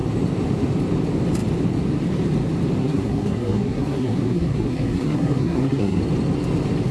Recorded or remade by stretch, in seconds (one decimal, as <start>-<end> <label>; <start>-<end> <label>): 0.0-2.8 recorded; 2.8-6.0 remade; 6.0-6.9 recorded